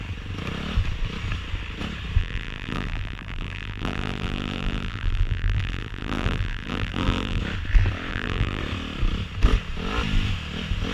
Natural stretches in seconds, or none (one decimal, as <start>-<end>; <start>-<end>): 0.0-2.2; 7.4-8.1; 8.6-10.9